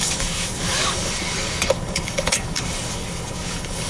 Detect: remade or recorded remade